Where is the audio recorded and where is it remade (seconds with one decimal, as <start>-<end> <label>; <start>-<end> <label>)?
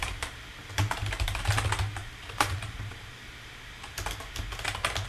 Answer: 0.0-1.5 remade; 1.5-2.0 recorded; 2.0-3.3 remade; 3.3-5.1 recorded